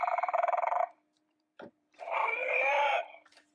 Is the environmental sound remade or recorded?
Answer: remade